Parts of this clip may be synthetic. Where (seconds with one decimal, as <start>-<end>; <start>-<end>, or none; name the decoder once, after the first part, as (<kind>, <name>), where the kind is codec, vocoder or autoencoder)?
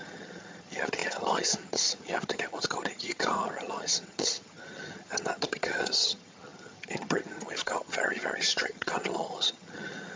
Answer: 0.0-10.2 (vocoder, HiFi-GAN)